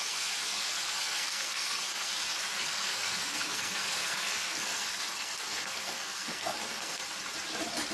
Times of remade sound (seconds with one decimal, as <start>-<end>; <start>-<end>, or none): 0.0-7.0